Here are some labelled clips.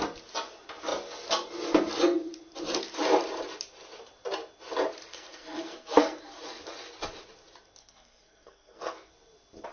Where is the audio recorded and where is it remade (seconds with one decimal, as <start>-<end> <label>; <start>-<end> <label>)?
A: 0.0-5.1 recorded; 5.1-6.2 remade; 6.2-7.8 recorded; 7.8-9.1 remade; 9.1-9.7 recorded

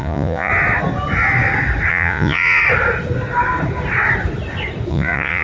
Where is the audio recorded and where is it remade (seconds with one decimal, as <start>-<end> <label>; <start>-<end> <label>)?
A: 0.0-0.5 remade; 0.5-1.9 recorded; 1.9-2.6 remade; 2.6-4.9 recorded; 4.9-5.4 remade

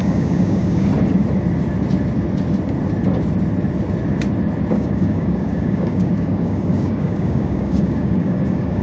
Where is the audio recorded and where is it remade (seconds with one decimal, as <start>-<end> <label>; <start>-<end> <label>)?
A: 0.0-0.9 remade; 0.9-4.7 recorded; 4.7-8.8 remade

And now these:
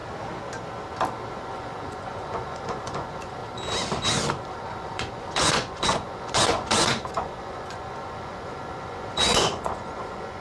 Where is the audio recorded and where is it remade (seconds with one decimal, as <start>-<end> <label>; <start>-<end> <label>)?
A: 0.0-1.4 recorded; 1.4-3.4 remade; 3.4-4.5 recorded; 4.5-10.4 remade

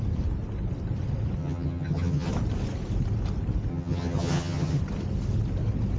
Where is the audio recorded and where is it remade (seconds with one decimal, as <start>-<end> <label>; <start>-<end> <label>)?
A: 0.0-1.4 recorded; 1.4-2.3 remade; 2.3-3.7 recorded; 3.7-4.8 remade; 4.8-6.0 recorded

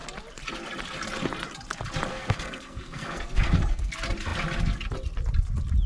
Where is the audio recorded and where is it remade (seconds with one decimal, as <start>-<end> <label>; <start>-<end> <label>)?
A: 0.0-2.1 recorded; 2.1-3.9 remade; 3.9-5.9 recorded

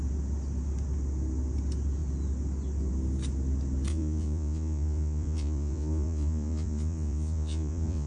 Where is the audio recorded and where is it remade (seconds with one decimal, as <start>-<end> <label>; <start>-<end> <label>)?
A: 0.0-3.9 recorded; 3.9-8.1 remade

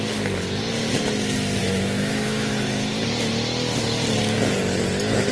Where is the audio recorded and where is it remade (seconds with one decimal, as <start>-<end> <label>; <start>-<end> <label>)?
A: 0.0-1.6 recorded; 1.6-2.5 remade; 2.5-5.3 recorded